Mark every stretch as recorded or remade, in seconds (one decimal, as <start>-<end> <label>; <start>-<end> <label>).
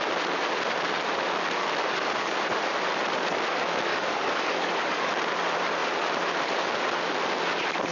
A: 0.0-1.8 recorded; 1.8-2.4 remade; 2.4-3.9 recorded; 3.9-5.1 remade; 5.1-7.9 recorded